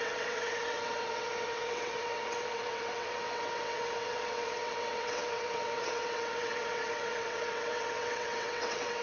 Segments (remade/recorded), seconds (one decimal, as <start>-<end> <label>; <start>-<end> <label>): 0.0-9.0 remade